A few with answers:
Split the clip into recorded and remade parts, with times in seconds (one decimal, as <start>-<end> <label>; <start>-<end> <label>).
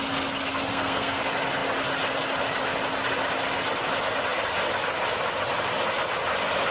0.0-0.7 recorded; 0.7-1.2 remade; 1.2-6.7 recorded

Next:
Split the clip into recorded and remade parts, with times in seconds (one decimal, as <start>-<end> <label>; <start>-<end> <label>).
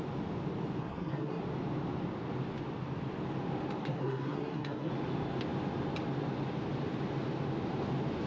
0.0-0.8 recorded; 0.8-1.4 remade; 1.4-3.8 recorded; 3.8-4.9 remade; 4.9-8.3 recorded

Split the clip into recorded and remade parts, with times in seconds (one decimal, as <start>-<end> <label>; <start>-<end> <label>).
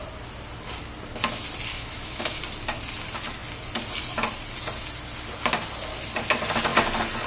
0.0-1.7 recorded; 1.7-2.4 remade; 2.4-7.3 recorded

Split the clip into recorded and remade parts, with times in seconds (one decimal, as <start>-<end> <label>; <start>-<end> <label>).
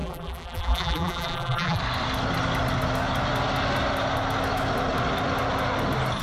0.0-1.8 remade; 1.8-6.2 recorded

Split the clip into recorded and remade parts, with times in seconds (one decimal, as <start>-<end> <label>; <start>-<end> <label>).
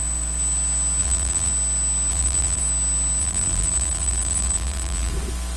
0.0-1.0 recorded; 1.0-1.5 remade; 1.5-2.1 recorded; 2.1-2.6 remade; 2.6-3.2 recorded; 3.2-5.1 remade; 5.1-5.6 recorded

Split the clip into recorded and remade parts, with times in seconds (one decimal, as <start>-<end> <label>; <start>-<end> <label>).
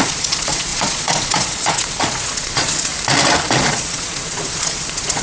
0.0-2.9 remade; 2.9-3.5 recorded; 3.5-5.2 remade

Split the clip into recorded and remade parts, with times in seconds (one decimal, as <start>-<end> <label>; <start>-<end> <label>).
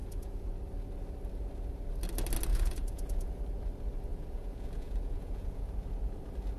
0.0-0.5 remade; 0.5-2.5 recorded; 2.5-3.4 remade; 3.4-4.1 recorded; 4.1-5.7 remade; 5.7-6.6 recorded